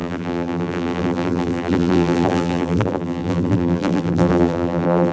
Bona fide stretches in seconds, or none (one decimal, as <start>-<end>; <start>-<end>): none